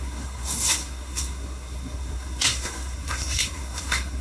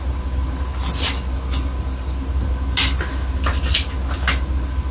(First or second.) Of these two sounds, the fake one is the first